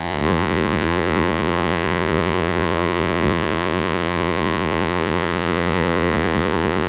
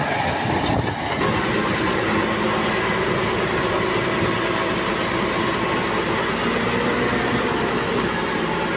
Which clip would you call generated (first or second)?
first